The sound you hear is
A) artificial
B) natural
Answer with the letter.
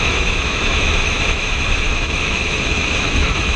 A